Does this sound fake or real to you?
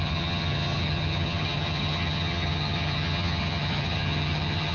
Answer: fake